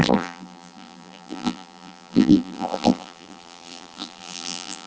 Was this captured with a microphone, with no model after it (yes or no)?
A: no